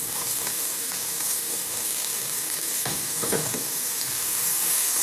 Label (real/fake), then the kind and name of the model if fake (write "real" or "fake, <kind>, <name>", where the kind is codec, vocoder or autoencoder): fake, codec, DAC